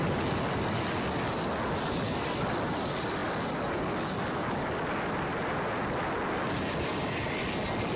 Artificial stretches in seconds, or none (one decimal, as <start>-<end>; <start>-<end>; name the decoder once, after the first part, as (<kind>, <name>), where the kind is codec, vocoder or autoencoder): none